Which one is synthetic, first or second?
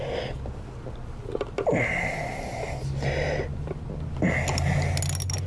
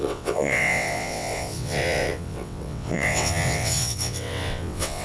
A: second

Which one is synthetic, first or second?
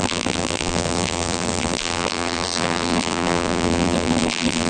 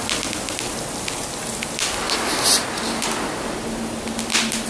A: first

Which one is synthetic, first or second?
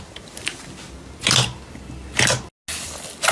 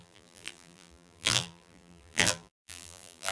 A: second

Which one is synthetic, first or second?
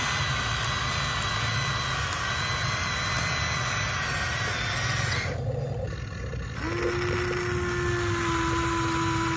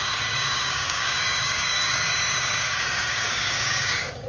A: second